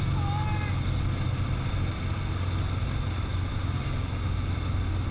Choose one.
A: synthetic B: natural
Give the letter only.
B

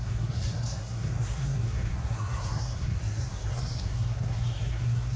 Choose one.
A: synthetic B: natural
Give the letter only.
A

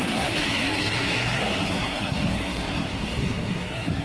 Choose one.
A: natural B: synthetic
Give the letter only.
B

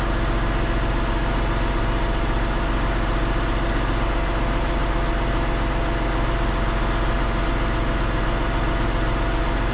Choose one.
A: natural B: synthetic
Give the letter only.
A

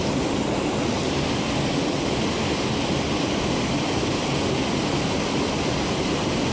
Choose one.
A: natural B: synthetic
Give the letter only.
A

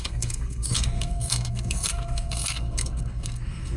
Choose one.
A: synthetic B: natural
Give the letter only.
A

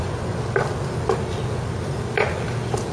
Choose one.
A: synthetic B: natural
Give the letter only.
B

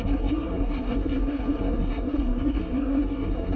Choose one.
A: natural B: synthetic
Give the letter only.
B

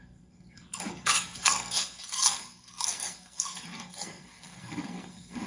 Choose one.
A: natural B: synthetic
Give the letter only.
B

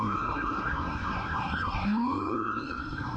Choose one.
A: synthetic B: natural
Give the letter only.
A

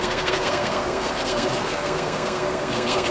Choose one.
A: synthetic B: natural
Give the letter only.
A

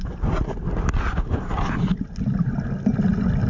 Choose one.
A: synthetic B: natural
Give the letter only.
B